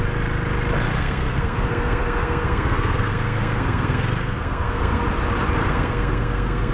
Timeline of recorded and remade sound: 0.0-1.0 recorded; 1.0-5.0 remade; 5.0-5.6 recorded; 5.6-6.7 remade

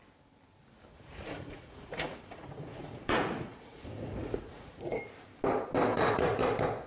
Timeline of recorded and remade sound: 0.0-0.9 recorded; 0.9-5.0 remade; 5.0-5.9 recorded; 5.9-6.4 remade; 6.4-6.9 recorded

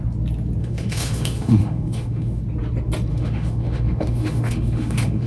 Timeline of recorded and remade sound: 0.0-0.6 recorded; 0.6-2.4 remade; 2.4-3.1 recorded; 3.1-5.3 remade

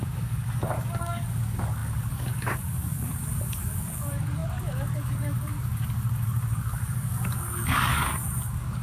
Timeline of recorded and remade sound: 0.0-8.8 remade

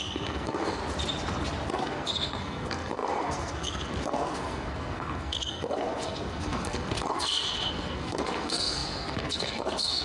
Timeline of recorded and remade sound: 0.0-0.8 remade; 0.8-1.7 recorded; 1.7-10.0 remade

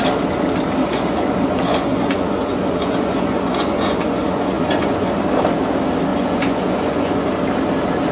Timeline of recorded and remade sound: 0.0-0.8 recorded; 0.8-5.1 remade; 5.1-6.1 recorded; 6.1-7.3 remade; 7.3-8.1 recorded